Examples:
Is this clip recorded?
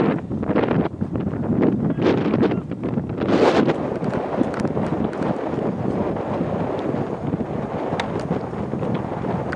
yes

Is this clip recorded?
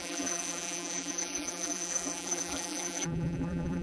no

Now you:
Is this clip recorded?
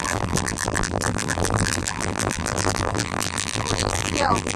no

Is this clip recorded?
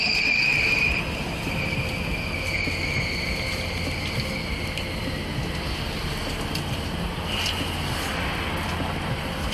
yes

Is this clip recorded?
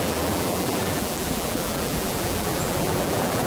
no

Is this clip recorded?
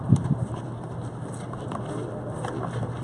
yes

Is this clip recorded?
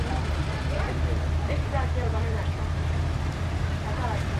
no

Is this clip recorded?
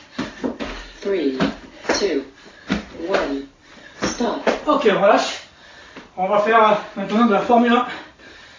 yes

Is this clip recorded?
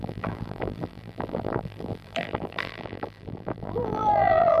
no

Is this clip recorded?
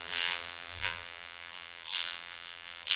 no